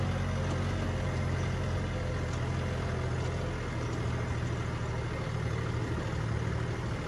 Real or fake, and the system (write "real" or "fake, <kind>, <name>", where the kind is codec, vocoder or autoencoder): real